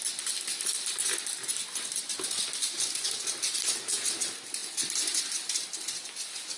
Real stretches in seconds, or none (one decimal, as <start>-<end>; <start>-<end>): 0.0-6.6